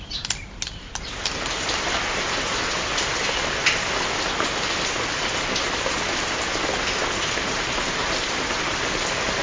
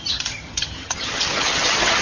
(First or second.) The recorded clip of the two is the first